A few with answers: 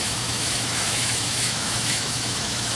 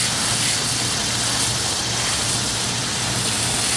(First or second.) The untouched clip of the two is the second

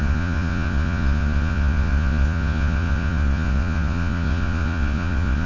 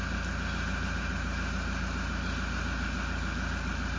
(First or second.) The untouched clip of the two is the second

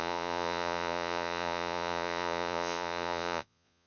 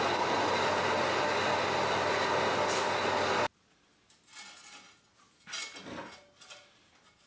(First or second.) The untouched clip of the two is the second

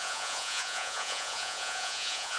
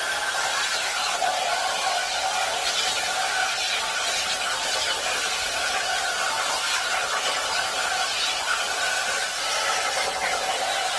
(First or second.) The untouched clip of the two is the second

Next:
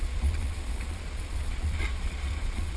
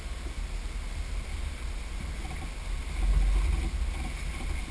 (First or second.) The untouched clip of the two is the second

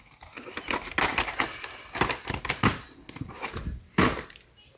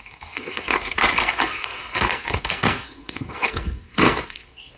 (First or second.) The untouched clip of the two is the first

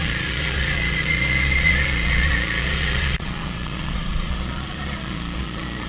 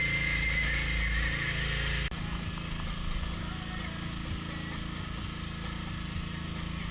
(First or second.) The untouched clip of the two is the second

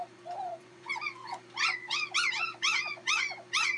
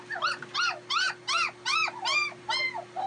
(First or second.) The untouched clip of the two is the second